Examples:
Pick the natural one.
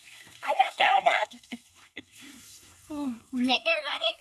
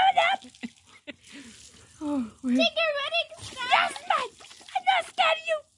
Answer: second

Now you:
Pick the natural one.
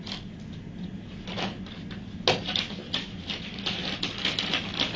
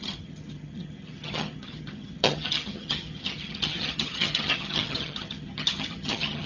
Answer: first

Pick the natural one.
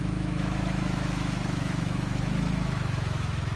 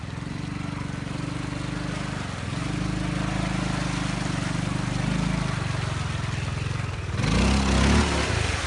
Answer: second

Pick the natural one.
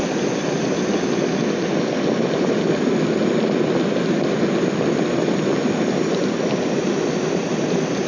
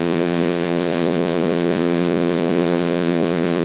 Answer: first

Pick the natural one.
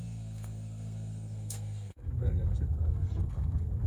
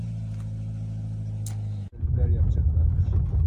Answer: second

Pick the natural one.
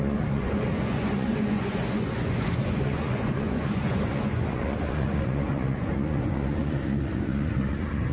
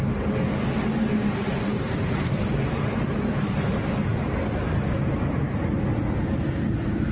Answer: second